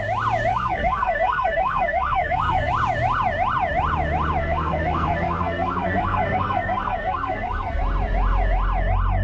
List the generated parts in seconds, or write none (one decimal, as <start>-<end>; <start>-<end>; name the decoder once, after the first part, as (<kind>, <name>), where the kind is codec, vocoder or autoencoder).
0.5-2.7 (codec, SNAC); 4.4-7.8